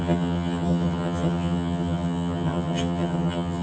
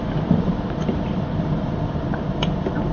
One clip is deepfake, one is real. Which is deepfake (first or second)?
first